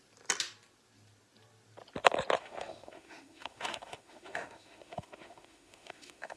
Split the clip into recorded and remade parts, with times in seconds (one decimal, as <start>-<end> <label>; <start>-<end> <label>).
0.0-2.4 recorded; 2.4-6.4 remade